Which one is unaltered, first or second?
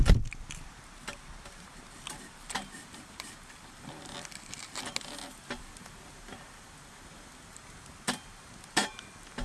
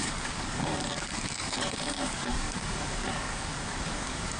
first